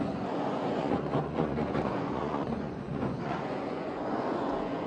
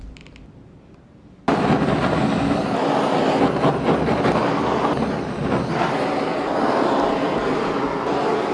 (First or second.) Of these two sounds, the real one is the second